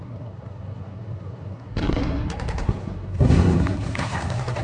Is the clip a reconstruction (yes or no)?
yes